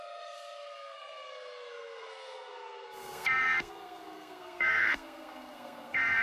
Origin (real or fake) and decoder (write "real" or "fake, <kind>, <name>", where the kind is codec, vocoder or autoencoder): fake, codec, SNAC